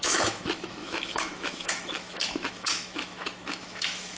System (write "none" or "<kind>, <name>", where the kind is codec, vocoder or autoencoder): autoencoder, DAC-VAE